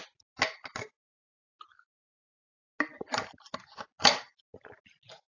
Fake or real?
real